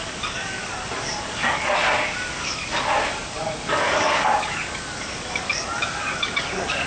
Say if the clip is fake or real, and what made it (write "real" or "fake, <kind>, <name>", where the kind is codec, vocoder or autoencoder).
fake, codec, DAC